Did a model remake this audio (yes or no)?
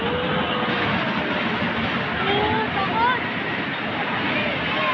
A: no